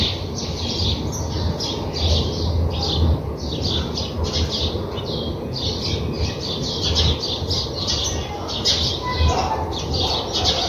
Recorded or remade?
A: recorded